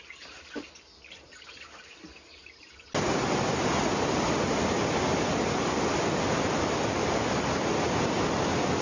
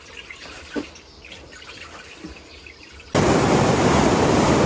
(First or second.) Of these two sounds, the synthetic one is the second